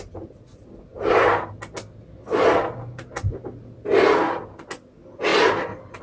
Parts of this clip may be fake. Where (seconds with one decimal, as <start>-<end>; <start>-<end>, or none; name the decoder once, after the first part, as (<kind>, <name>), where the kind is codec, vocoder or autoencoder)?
none